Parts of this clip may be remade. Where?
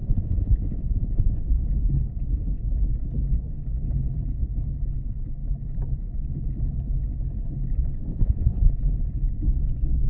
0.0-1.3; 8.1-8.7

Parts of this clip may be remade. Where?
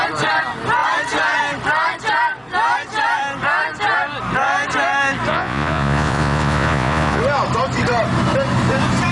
5.3-7.2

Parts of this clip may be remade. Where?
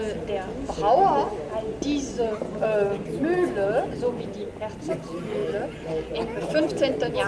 none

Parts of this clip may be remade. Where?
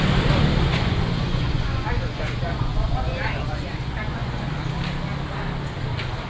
0.7-4.5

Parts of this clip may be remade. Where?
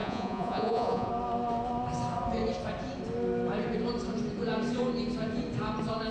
0.0-1.1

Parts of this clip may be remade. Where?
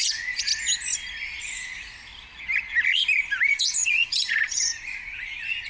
0.0-0.5; 1.4-2.1; 3.5-5.7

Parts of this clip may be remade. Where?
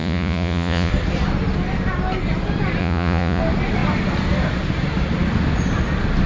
0.0-0.9; 2.8-3.4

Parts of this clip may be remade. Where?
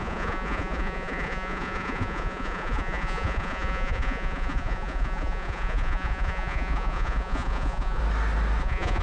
0.0-8.0; 8.6-9.0